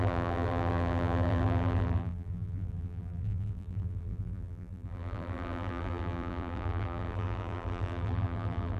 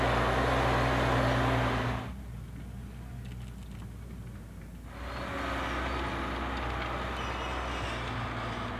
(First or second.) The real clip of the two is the second